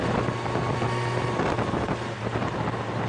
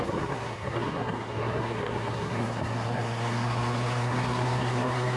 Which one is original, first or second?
first